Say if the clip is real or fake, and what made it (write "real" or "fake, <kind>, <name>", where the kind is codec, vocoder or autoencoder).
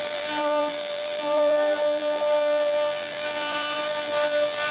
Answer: fake, vocoder, BigVGAN v2